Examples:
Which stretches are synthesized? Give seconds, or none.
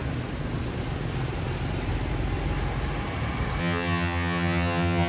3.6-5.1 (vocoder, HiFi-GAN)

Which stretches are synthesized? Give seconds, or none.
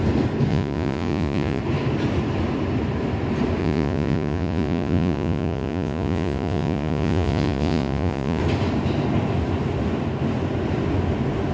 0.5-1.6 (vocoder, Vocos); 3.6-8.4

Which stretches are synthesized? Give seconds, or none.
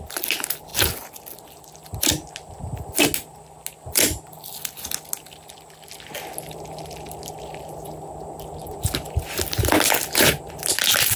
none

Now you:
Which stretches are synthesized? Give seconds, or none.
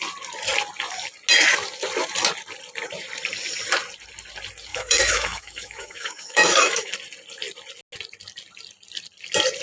4.7-6.9 (autoencoder, DAC-VAE)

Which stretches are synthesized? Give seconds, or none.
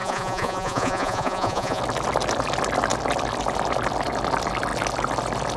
0.0-1.8 (vocoder, Vocos)